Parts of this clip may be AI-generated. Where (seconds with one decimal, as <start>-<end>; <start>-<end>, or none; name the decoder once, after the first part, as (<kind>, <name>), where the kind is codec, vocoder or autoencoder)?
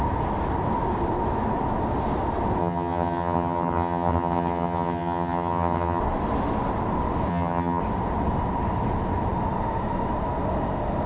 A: 2.6-6.0 (vocoder, HiFi-GAN); 7.3-7.8